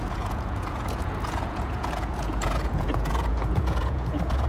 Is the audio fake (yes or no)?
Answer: yes